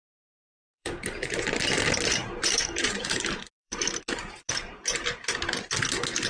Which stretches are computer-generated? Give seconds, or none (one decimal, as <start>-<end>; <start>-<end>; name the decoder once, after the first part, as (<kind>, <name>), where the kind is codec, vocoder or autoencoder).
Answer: 0.0-1.4 (vocoder, BigVGAN v2); 2.2-5.5